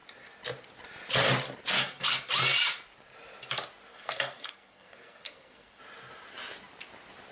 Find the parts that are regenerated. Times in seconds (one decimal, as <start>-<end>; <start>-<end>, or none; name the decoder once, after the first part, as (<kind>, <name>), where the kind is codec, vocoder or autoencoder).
1.8-2.3 (codec, SNAC); 3.9-5.8